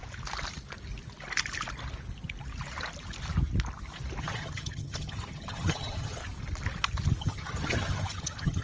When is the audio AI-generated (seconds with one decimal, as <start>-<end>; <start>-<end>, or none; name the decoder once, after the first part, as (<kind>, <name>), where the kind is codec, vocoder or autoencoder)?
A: 4.2-6.2 (vocoder, HiFi-GAN); 7.2-8.6